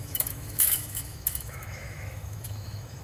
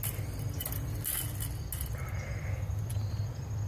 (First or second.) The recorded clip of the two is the second